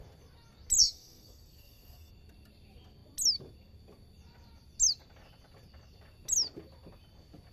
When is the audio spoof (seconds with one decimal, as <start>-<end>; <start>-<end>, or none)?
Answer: 0.8-2.1